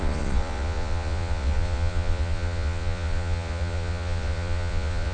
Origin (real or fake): fake